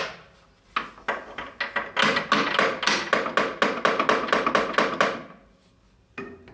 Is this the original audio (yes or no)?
yes